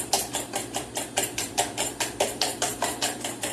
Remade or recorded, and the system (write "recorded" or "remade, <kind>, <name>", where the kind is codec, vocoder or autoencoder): remade, vocoder, BigVGAN v2